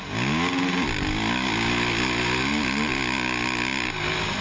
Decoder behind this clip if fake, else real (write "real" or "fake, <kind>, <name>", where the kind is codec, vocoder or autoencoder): real